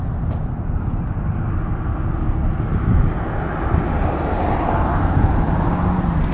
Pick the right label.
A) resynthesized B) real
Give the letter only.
B